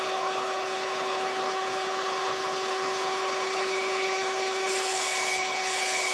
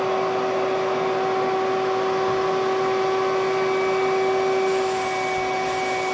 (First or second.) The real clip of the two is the second